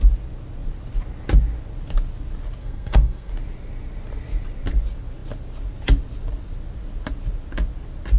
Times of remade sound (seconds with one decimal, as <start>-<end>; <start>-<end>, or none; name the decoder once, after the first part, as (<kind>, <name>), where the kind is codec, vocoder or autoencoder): 2.6-3.3 (codec, SNAC)